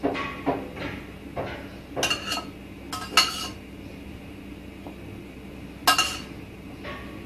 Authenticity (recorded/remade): recorded